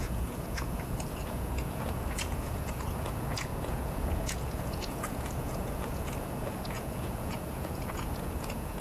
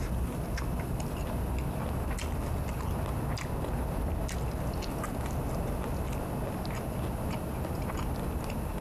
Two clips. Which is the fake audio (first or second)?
first